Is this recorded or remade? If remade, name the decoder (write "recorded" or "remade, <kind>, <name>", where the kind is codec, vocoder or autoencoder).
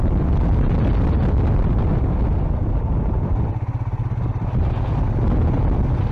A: recorded